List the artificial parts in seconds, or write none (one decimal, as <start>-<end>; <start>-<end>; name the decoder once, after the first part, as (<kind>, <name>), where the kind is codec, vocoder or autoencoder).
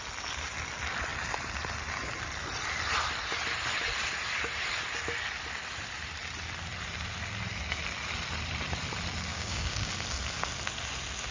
9.3-9.9 (codec, DAC)